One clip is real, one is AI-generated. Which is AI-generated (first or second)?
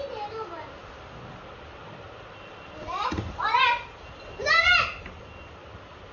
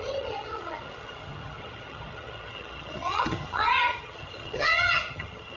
second